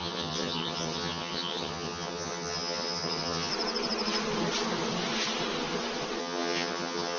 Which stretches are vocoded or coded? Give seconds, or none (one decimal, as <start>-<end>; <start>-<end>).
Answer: 0.0-3.5; 6.2-7.2